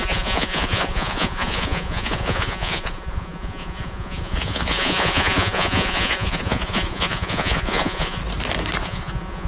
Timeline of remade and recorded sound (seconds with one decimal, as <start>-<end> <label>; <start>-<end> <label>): 0.0-8.2 remade; 8.2-8.8 recorded; 8.8-9.5 remade